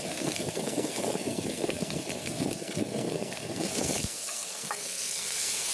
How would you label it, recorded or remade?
remade